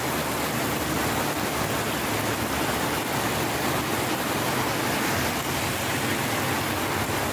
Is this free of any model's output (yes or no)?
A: yes